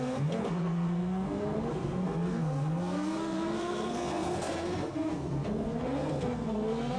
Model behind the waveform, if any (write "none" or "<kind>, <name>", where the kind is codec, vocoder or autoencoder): codec, SNAC